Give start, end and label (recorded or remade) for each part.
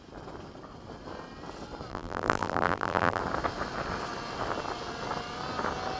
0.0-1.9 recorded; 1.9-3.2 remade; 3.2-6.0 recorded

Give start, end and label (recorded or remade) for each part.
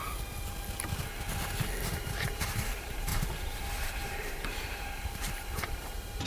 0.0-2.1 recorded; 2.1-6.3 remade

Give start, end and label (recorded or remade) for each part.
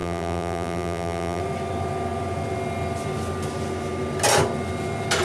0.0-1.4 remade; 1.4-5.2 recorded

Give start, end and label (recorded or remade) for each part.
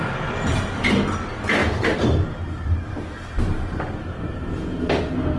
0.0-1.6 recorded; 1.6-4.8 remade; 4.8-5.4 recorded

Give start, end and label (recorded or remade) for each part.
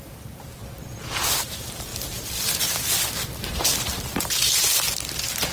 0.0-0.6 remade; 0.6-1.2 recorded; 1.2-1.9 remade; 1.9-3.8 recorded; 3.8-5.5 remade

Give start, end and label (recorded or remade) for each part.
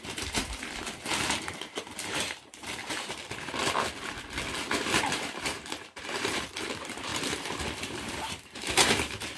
0.0-3.6 remade; 3.6-4.6 recorded; 4.6-9.4 remade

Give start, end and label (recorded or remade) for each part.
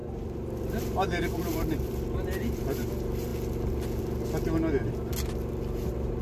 0.0-2.9 remade; 2.9-6.2 recorded